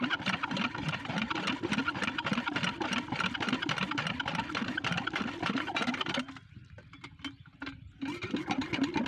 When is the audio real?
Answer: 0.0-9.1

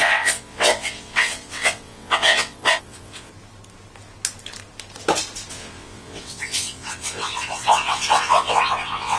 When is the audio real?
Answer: 3.3-5.5

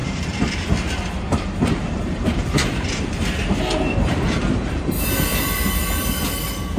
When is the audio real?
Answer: 0.7-1.3; 4.9-6.8